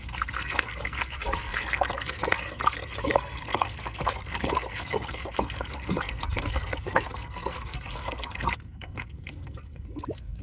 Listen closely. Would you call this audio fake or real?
fake